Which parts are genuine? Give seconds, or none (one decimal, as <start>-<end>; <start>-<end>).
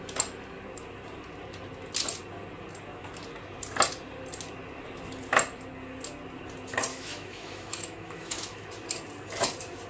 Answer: 0.0-6.9; 8.7-9.9